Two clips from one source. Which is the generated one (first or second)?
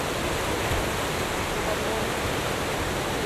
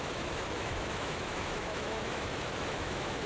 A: second